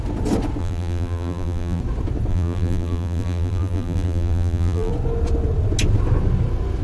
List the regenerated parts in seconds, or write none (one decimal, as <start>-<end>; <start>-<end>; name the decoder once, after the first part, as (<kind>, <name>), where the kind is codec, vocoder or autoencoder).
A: 0.6-1.8 (vocoder, BigVGAN v2); 2.3-4.9